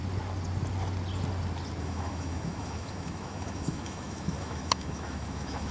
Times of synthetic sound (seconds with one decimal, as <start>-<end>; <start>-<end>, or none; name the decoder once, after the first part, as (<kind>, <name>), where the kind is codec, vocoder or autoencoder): 1.8-5.7 (autoencoder, DAC-VAE)